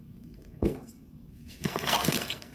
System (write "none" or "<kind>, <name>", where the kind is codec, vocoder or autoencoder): codec, SNAC